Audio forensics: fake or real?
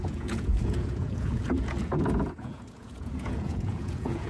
fake